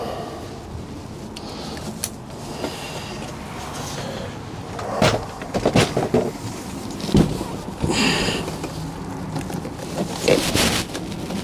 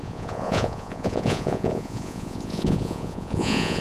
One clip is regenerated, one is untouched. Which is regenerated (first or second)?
second